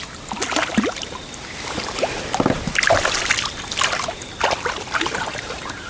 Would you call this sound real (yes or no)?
yes